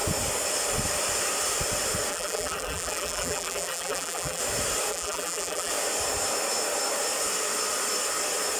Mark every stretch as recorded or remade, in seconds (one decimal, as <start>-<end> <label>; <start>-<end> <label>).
0.0-2.1 recorded; 2.1-4.4 remade; 4.4-4.9 recorded; 4.9-5.7 remade; 5.7-8.6 recorded